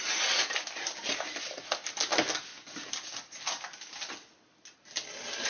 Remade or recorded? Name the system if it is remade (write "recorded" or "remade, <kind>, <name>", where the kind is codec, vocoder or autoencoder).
recorded